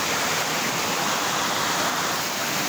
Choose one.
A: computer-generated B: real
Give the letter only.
A